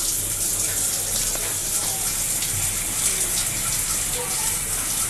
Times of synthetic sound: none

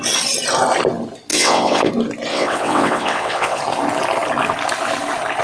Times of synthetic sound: 1.3-1.9; 2.3-3.6